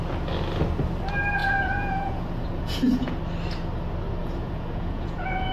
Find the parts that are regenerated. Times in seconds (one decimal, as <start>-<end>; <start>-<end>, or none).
1.4-3.2; 4.2-5.5